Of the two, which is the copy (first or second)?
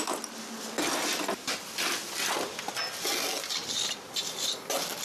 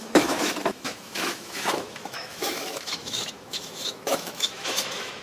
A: second